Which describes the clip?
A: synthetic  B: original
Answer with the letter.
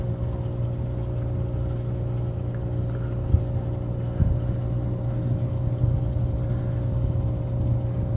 B